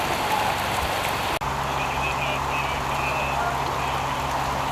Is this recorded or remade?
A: recorded